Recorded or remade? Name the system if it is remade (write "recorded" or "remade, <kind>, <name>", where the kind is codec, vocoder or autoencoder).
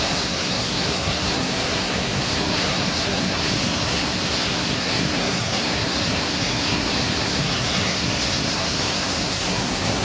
remade, codec, SNAC